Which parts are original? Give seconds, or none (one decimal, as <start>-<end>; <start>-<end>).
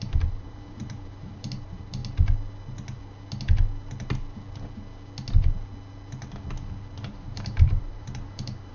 2.0-7.1